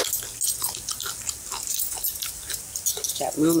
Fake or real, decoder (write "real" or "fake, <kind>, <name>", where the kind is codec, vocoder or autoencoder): real